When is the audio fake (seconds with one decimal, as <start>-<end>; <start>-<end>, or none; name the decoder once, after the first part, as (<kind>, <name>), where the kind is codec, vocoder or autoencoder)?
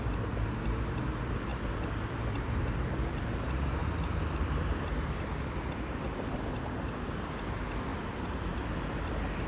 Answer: 1.5-3.1 (vocoder, BigVGAN v2); 3.8-7.0; 7.9-8.6